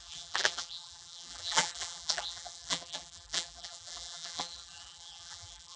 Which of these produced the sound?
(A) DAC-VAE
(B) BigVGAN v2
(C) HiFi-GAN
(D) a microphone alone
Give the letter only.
B